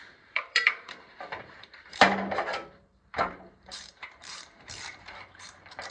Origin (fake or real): fake